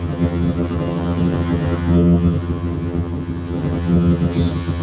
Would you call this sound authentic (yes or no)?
no